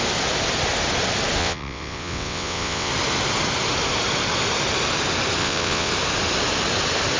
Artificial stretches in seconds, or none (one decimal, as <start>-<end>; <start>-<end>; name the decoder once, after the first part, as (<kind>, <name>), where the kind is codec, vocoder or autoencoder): 1.4-2.9 (vocoder, WaveNeXt); 5.4-5.9